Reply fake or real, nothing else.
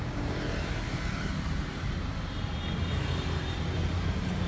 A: fake